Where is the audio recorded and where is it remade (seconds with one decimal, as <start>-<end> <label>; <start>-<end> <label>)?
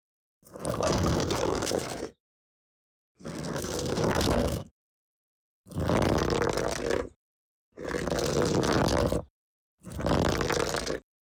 0.0-0.7 recorded; 0.7-4.7 remade; 4.7-11.2 recorded